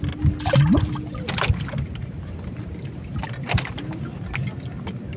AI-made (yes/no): no